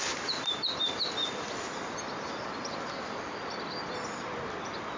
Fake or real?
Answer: real